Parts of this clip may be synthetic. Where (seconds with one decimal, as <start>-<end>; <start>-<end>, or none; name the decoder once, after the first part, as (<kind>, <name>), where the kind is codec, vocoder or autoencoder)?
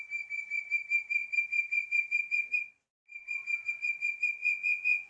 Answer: 4.4-5.1 (vocoder, Vocos)